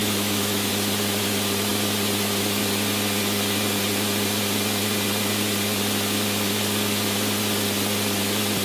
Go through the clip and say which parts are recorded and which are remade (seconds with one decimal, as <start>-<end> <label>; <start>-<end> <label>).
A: 0.0-0.7 remade; 0.7-8.6 recorded